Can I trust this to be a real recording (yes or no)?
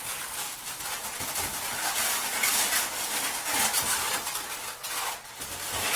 yes